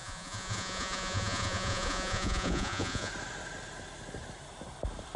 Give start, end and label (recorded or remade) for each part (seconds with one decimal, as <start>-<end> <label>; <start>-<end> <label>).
0.0-3.1 remade; 3.1-5.2 recorded